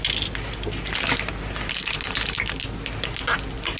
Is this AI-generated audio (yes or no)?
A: no